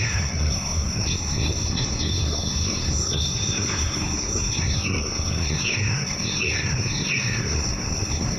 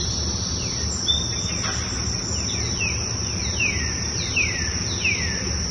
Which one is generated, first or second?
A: first